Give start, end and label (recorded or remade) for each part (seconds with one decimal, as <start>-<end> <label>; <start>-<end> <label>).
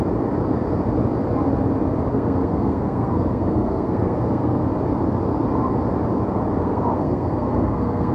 0.0-2.1 recorded; 2.1-4.7 remade; 4.7-6.6 recorded; 6.6-8.1 remade